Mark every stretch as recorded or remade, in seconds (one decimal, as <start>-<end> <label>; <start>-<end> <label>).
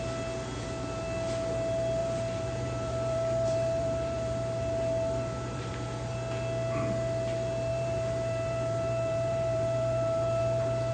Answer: 0.0-2.0 recorded; 2.0-5.7 remade; 5.7-7.7 recorded; 7.7-10.4 remade; 10.4-10.9 recorded